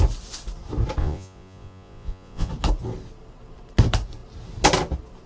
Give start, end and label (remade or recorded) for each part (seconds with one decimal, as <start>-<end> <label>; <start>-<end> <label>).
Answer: 0.0-1.0 recorded; 1.0-2.5 remade; 2.5-5.3 recorded